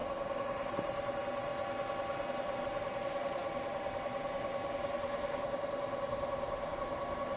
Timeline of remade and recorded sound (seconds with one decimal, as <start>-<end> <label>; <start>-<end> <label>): 0.0-0.7 recorded; 0.7-1.5 remade; 1.5-2.6 recorded; 2.6-7.4 remade